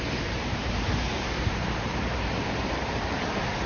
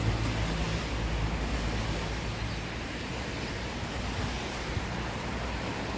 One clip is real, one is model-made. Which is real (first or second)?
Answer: second